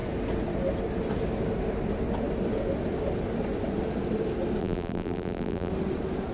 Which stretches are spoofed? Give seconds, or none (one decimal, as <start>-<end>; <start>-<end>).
4.6-5.7